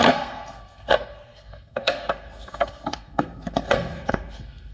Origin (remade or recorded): remade